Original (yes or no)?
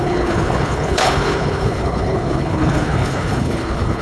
no